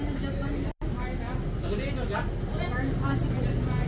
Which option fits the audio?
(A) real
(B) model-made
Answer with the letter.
A